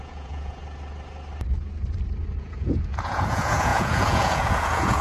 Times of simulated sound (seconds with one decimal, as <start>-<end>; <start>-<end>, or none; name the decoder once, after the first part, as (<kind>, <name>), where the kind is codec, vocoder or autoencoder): 0.0-0.6 (vocoder, Vocos); 2.4-5.0